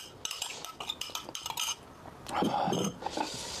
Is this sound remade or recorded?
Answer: recorded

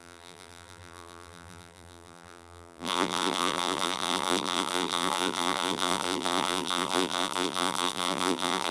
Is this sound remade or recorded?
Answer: remade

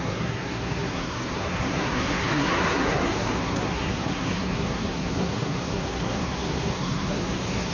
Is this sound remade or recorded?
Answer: remade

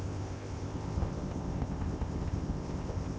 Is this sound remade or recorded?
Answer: remade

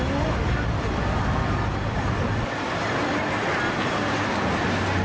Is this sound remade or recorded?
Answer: recorded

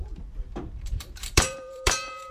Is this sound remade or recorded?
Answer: remade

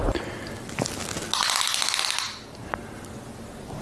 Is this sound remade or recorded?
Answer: recorded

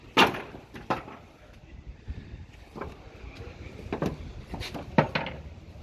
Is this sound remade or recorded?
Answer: recorded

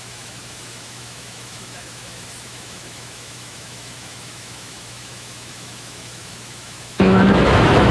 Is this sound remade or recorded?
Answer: remade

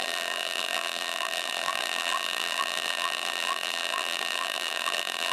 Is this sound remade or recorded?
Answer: remade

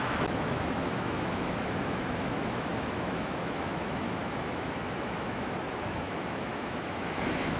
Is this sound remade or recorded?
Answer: remade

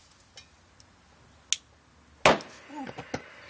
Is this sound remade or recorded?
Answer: recorded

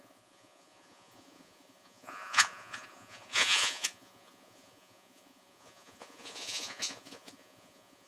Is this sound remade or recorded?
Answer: remade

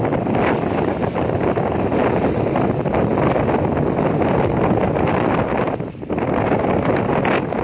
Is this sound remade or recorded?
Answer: recorded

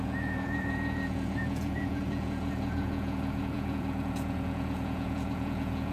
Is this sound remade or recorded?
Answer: remade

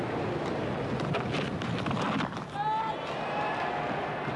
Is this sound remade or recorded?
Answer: recorded